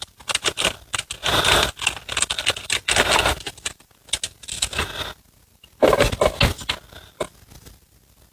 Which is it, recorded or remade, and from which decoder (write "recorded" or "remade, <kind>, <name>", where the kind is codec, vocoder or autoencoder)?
recorded